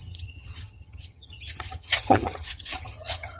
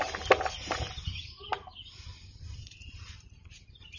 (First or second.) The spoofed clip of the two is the first